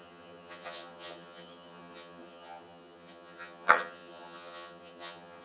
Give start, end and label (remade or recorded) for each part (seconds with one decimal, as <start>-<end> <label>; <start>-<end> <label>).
0.0-5.4 remade